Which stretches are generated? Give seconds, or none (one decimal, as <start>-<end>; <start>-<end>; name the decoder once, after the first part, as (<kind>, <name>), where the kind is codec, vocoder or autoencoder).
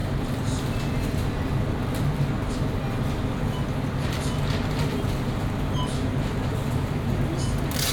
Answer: none